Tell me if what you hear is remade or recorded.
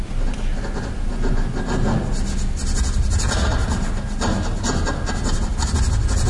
recorded